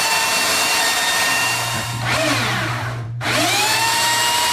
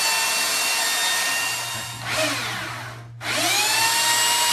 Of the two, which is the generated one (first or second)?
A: first